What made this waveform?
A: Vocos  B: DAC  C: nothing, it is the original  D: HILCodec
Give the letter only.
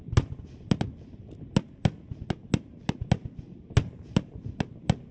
C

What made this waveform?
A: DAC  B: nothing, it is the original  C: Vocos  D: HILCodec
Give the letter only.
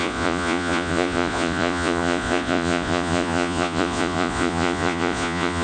C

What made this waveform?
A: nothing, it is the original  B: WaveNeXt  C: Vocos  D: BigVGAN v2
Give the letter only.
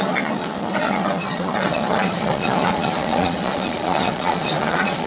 C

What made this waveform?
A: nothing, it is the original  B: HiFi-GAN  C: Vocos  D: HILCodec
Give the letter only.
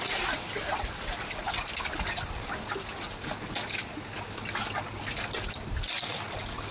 A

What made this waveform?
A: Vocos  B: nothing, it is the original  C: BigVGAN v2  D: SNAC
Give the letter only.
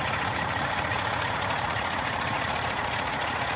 A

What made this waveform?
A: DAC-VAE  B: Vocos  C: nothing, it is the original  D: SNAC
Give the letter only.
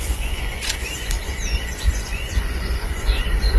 B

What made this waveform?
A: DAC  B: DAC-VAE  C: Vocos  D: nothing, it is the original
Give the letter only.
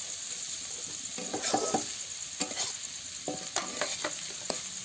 D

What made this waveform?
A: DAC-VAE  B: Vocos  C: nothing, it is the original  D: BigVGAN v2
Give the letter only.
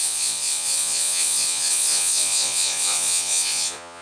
B